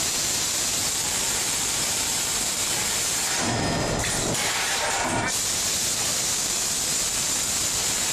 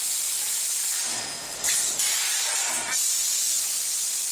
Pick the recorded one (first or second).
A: second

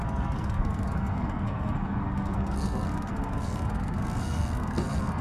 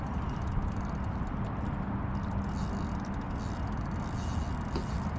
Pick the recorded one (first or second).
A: second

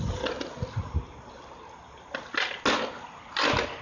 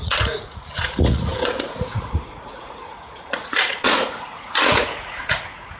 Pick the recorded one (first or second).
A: first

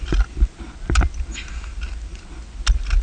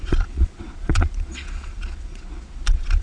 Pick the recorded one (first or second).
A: first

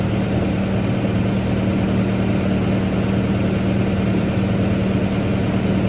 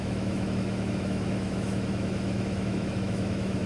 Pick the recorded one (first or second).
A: first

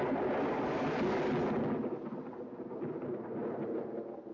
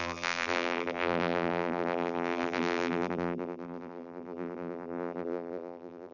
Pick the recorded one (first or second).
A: first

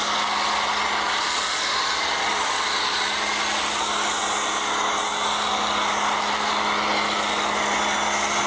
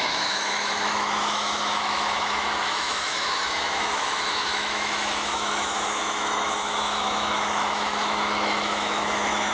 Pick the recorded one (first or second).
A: first